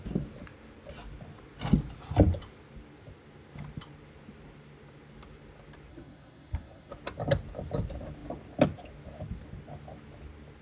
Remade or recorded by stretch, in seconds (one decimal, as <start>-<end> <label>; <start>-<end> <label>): 0.0-5.9 recorded; 5.9-6.9 remade; 6.9-10.6 recorded